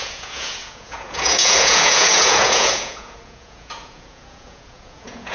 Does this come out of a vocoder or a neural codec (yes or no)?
yes